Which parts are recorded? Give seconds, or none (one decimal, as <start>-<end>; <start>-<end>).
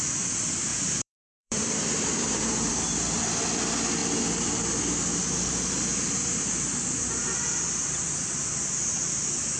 0.0-0.7; 2.7-4.0; 4.8-5.2; 5.8-9.6